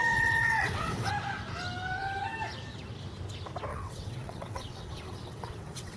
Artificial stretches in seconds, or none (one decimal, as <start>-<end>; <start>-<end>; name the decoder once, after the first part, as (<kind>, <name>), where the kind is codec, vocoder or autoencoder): 0.0-1.1 (vocoder, WaveNeXt); 3.7-6.0